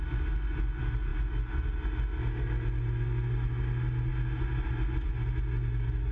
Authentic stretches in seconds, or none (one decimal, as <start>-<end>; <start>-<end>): 0.0-6.1